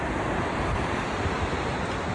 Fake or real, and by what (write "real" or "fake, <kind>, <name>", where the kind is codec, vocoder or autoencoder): fake, vocoder, BigVGAN v2